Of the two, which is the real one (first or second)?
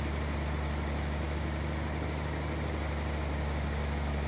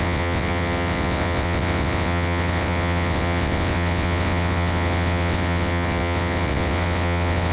first